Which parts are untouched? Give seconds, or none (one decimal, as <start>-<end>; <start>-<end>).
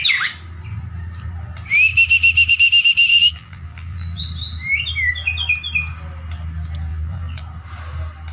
0.0-3.1; 4.2-6.9; 7.4-8.3